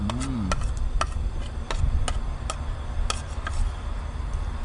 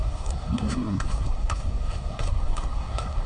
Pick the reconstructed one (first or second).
second